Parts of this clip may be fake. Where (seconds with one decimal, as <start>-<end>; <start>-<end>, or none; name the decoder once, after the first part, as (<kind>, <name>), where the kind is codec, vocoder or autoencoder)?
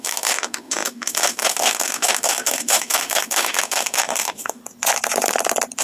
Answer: 0.0-4.6 (autoencoder, DAC-VAE)